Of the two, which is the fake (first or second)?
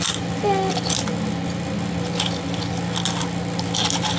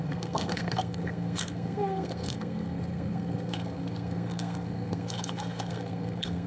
second